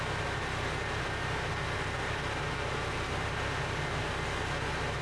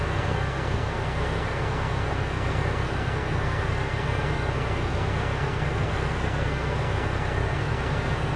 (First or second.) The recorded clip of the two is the first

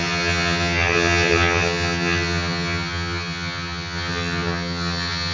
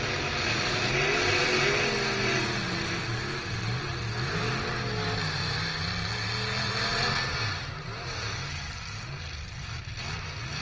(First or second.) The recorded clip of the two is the second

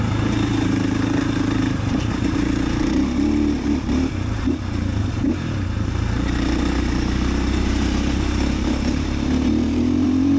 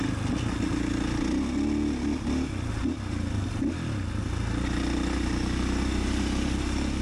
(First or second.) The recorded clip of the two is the second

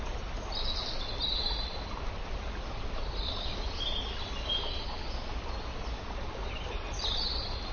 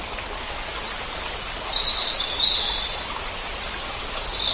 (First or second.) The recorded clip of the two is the first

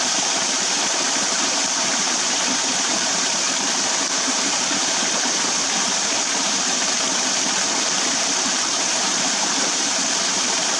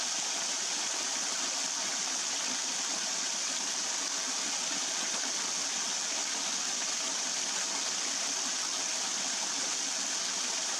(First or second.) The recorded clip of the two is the second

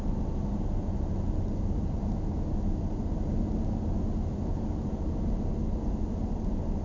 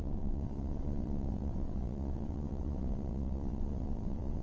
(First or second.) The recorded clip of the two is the first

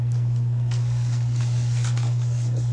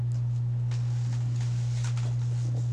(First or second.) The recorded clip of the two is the second